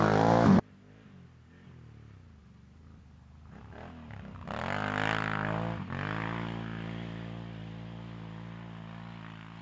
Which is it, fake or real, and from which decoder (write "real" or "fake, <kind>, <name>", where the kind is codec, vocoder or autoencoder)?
real